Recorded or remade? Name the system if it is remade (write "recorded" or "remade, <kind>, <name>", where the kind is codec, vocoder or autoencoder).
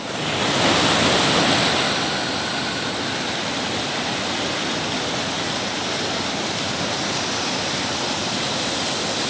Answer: recorded